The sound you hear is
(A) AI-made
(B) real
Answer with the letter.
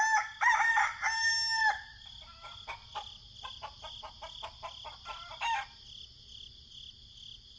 B